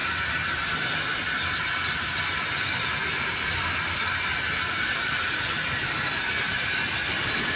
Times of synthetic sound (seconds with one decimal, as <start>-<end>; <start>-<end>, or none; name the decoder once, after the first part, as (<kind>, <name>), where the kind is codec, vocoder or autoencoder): none